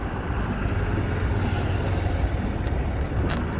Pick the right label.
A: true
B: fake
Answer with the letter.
A